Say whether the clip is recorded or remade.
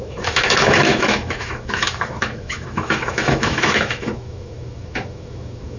remade